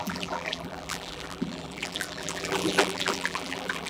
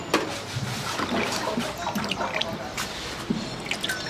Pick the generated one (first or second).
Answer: first